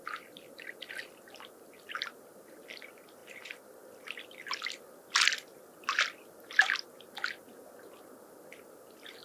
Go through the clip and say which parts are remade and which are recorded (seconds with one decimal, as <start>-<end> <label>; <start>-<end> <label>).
0.0-3.2 recorded; 3.2-4.8 remade; 4.8-9.2 recorded